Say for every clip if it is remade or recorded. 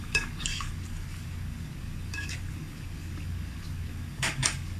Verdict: remade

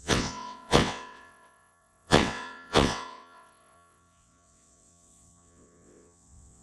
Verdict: remade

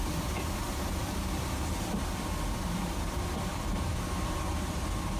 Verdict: remade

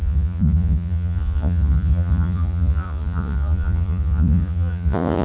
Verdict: remade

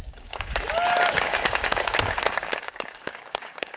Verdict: remade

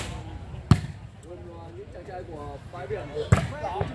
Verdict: recorded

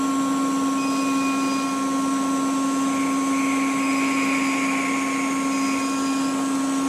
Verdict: recorded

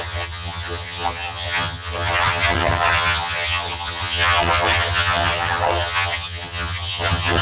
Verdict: remade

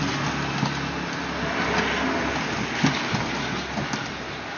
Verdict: recorded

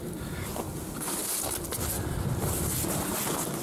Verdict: recorded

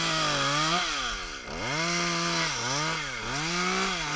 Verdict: recorded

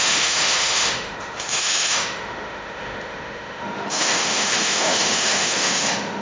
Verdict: remade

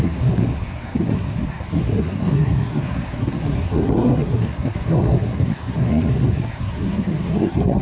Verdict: remade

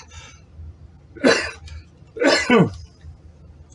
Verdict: recorded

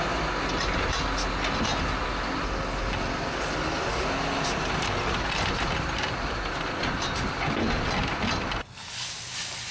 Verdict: recorded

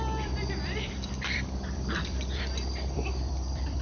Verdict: remade